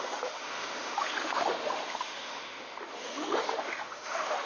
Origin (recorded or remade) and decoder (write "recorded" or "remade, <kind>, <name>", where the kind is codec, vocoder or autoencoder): remade, autoencoder, DAC-VAE